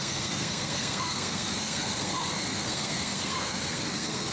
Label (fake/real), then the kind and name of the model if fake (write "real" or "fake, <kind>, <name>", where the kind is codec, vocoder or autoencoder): fake, codec, SNAC